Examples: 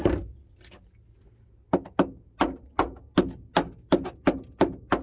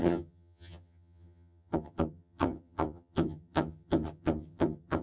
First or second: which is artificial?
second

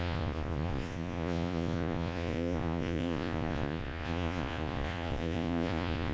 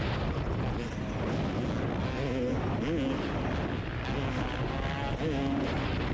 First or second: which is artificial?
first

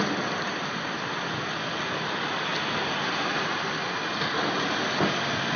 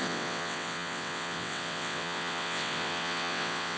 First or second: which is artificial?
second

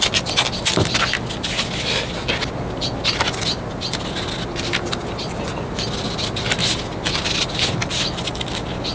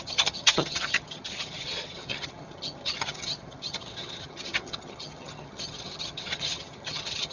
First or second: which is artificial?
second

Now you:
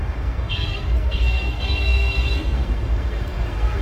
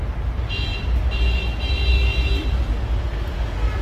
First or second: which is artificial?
first